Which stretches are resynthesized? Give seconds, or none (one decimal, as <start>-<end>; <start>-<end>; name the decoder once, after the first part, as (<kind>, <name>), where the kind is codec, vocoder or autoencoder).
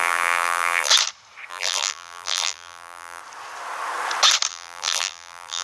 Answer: 0.0-0.9 (vocoder, BigVGAN v2); 1.5-3.2; 4.5-5.6